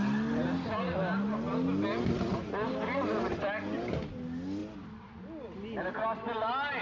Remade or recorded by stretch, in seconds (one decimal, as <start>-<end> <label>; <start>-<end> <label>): 0.0-6.8 recorded